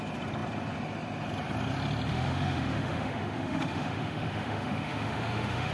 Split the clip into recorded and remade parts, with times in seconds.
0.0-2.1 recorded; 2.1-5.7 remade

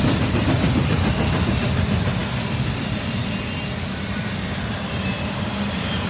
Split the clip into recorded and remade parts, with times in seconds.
0.0-6.1 recorded

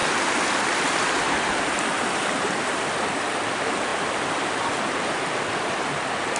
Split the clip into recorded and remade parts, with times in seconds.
0.0-6.4 recorded

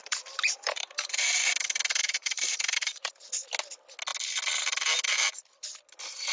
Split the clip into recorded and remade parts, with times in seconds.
0.0-1.5 remade; 1.5-2.0 recorded; 2.0-3.1 remade; 3.1-6.3 recorded